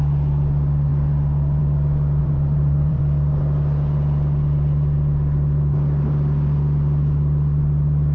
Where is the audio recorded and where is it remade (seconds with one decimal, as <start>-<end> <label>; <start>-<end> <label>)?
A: 0.0-2.2 recorded; 2.2-3.0 remade; 3.0-8.1 recorded